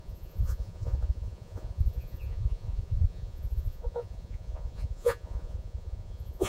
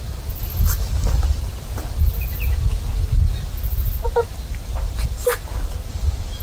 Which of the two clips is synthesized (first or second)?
first